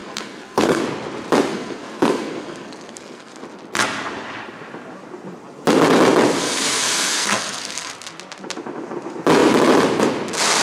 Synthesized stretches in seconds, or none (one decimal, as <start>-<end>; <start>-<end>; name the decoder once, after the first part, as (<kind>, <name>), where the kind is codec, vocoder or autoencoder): 0.0-0.8 (codec, SNAC); 1.5-3.4; 6.4-7.9